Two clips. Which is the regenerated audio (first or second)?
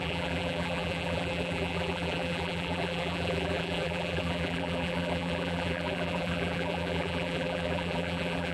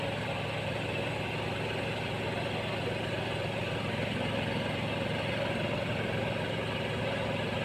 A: first